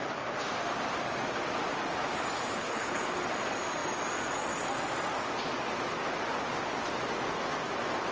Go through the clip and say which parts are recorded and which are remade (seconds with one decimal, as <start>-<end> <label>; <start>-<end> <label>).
0.0-2.6 recorded; 2.6-3.2 remade; 3.2-8.1 recorded